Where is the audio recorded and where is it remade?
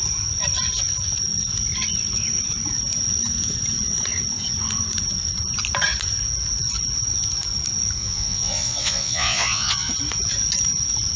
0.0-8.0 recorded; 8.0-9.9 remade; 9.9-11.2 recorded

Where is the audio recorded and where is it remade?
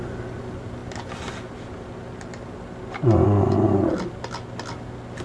0.0-5.2 recorded